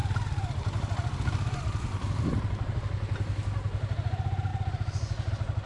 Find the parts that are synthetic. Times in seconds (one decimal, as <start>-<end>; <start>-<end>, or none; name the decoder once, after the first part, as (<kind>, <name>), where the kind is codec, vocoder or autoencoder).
none